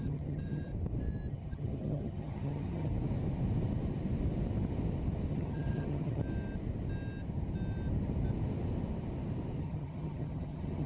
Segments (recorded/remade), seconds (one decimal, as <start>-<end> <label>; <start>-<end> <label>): 0.0-0.7 remade; 0.7-1.3 recorded; 1.3-2.9 remade; 2.9-5.3 recorded; 5.3-6.2 remade; 6.2-9.6 recorded; 9.6-10.9 remade